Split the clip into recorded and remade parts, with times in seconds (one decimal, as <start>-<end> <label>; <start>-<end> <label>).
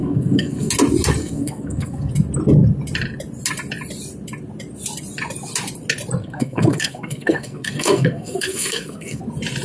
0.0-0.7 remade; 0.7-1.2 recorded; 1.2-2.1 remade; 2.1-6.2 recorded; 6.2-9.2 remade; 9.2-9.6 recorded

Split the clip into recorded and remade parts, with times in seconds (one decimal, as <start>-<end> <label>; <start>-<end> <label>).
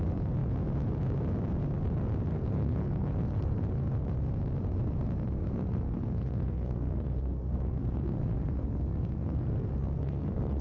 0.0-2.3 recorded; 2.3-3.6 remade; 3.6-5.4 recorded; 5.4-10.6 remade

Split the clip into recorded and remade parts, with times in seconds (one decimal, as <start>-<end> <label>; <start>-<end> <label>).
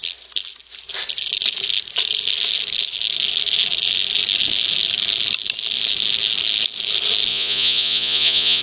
0.0-7.3 recorded; 7.3-8.6 remade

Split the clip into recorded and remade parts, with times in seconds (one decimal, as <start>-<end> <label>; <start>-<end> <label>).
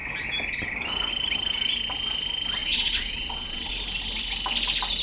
0.0-2.6 recorded; 2.6-3.7 remade; 3.7-5.0 recorded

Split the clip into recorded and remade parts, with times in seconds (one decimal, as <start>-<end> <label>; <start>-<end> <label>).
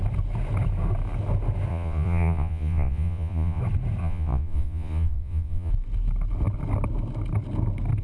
0.0-1.7 recorded; 1.7-3.6 remade; 3.6-4.0 recorded; 4.0-5.7 remade; 5.7-8.0 recorded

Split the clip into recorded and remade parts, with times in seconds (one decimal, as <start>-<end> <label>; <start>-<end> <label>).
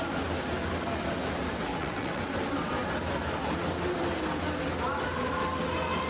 0.0-1.7 recorded; 1.7-2.2 remade; 2.2-6.1 recorded